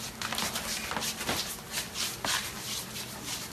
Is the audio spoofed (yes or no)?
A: no